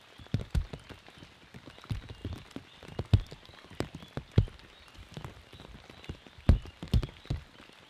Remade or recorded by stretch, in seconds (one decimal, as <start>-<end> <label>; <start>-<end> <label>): 0.0-7.9 recorded